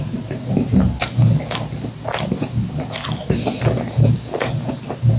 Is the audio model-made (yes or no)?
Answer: no